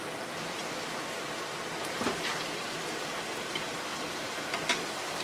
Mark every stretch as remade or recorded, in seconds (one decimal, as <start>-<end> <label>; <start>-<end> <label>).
0.0-0.6 remade; 0.6-3.0 recorded; 3.0-5.2 remade